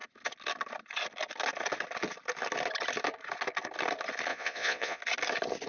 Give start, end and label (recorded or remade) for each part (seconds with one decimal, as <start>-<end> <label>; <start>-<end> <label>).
0.0-4.3 recorded; 4.3-5.0 remade; 5.0-5.7 recorded